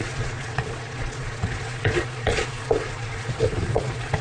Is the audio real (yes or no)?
no